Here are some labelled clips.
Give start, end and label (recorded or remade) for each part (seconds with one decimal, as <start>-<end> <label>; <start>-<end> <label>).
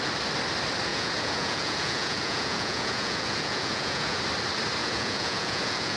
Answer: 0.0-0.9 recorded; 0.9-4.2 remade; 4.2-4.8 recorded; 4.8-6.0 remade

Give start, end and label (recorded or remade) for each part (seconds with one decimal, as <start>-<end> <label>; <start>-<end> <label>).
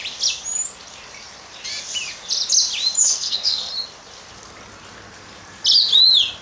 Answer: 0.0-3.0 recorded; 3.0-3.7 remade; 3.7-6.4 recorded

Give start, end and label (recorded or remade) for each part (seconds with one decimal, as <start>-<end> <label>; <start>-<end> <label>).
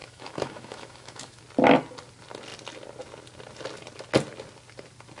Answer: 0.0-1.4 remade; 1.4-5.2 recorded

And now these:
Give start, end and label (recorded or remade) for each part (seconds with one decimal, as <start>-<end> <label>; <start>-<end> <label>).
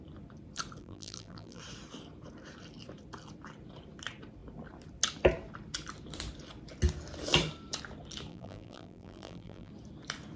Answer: 0.0-0.8 recorded; 0.8-1.6 remade; 1.6-8.3 recorded; 8.3-9.7 remade; 9.7-10.4 recorded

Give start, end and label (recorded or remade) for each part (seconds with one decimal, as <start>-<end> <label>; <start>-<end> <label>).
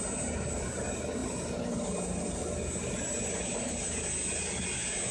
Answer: 0.0-5.1 recorded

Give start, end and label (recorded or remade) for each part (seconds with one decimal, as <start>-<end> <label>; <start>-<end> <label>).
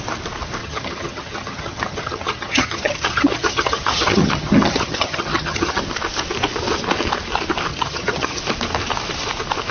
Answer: 0.0-0.6 recorded; 0.6-5.8 remade; 5.8-7.7 recorded; 7.7-8.4 remade; 8.4-9.7 recorded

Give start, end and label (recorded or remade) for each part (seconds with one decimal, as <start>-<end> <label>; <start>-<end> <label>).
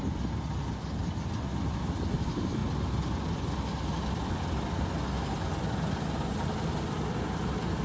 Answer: 0.0-7.8 recorded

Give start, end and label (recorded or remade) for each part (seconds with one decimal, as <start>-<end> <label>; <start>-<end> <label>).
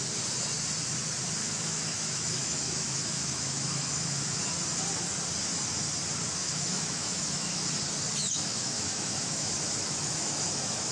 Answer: 0.0-1.4 recorded; 1.4-4.4 remade; 4.4-6.4 recorded; 6.4-7.5 remade; 7.5-8.2 recorded; 8.2-10.9 remade